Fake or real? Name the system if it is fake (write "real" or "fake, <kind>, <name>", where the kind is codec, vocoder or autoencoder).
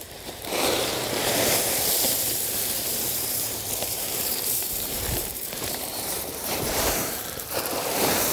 fake, vocoder, BigVGAN v2